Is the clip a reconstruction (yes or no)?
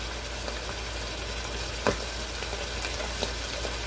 no